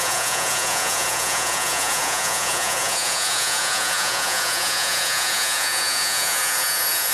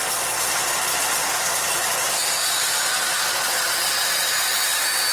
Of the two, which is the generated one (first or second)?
first